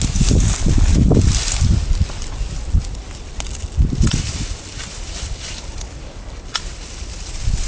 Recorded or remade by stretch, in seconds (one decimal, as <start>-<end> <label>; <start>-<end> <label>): 0.0-7.7 recorded